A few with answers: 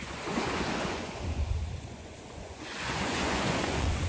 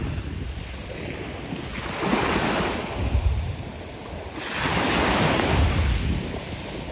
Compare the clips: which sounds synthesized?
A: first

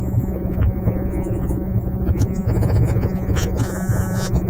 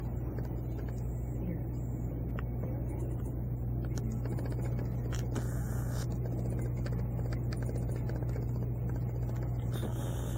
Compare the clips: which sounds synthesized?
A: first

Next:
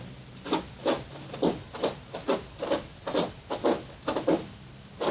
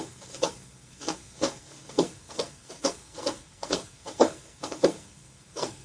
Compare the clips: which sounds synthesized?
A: second